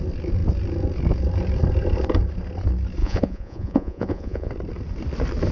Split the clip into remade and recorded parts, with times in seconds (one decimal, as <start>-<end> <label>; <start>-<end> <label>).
0.0-3.0 recorded; 3.0-4.5 remade; 4.5-5.5 recorded